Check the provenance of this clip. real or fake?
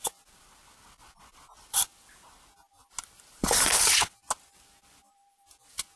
real